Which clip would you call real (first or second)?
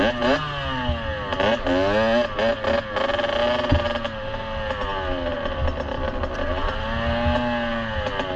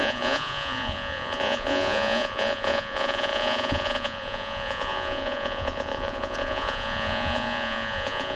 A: first